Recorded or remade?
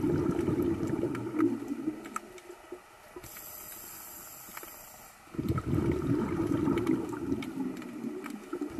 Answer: recorded